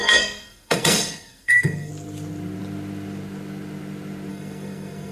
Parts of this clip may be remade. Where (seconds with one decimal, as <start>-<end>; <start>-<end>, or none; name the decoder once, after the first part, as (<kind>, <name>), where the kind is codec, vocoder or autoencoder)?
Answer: 0.0-1.9 (codec, SNAC); 4.3-5.1